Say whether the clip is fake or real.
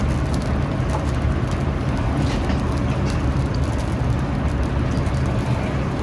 real